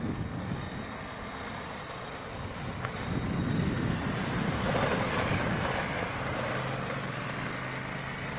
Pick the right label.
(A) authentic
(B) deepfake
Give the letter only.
A